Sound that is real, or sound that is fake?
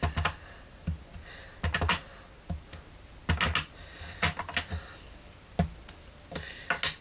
real